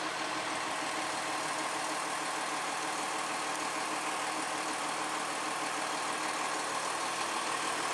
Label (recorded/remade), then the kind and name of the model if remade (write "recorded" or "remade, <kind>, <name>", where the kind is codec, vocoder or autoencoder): recorded